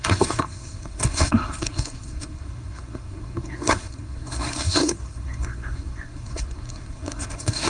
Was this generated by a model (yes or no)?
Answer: yes